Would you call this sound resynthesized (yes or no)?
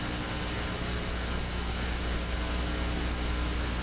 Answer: no